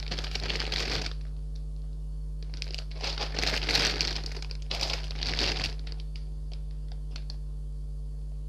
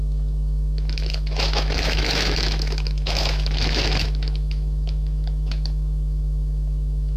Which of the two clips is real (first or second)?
first